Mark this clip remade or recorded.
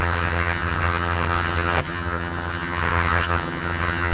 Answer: remade